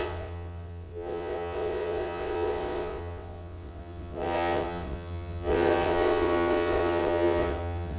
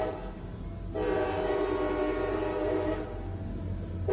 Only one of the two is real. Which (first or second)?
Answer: second